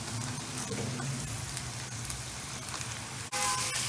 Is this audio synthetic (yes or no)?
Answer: no